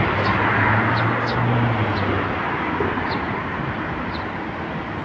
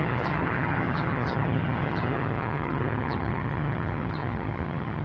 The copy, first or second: second